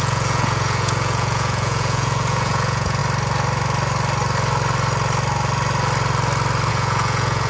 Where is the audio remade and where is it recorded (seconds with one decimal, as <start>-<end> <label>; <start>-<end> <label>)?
0.0-3.0 remade; 3.0-6.7 recorded; 6.7-7.5 remade